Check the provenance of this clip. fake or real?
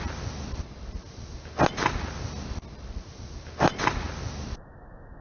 real